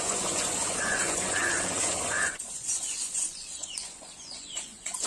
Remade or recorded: remade